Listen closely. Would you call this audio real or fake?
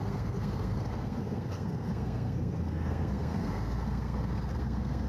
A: fake